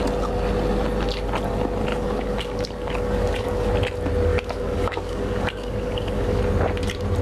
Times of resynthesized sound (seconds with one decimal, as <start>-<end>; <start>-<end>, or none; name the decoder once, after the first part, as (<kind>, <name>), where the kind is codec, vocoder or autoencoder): 1.9-3.7 (codec, DAC); 4.3-6.4